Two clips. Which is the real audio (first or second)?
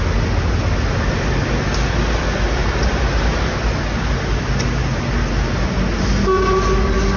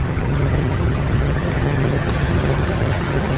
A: first